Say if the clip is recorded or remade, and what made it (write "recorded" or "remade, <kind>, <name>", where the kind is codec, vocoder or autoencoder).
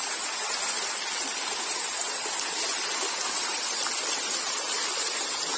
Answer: recorded